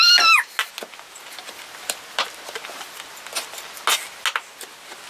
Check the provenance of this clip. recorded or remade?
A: recorded